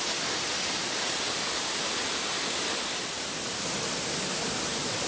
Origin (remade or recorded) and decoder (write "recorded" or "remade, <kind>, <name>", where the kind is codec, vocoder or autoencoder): recorded